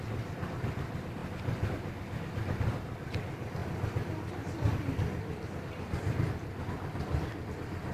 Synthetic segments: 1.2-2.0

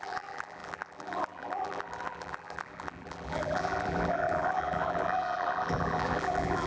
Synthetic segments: 0.0-6.7

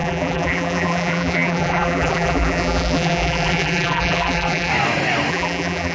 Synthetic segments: 0.0-4.7; 5.3-5.9